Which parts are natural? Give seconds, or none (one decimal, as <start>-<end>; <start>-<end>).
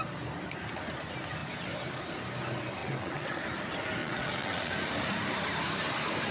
0.0-2.8; 3.4-4.0; 4.7-6.3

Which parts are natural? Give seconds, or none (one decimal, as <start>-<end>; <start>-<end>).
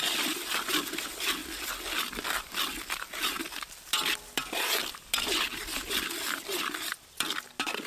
0.0-7.9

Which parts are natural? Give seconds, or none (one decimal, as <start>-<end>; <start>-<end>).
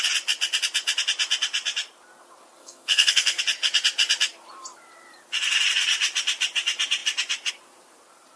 0.0-2.6; 3.4-8.4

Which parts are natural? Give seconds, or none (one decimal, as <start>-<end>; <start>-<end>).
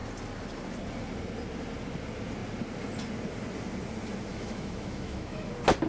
0.0-4.3; 5.5-5.9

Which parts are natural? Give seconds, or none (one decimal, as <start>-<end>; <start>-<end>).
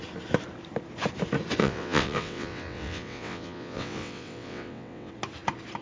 0.0-1.6; 5.1-5.8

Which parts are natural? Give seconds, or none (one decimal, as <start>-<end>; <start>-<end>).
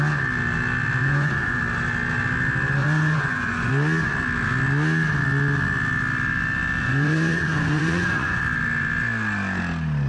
0.0-1.0; 1.6-2.8; 3.7-6.8; 8.4-10.1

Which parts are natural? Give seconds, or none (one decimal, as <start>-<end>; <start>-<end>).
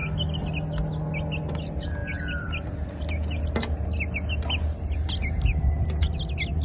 0.0-6.6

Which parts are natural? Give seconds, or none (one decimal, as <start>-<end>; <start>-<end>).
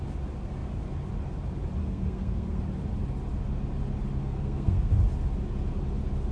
0.0-1.8; 2.6-4.2; 4.9-6.3